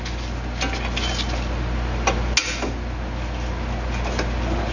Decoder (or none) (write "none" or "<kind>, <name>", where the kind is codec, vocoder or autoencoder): none